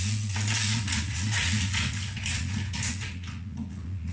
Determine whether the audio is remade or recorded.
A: remade